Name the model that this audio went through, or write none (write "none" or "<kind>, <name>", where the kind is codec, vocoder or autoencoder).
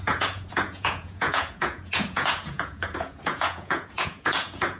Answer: vocoder, Vocos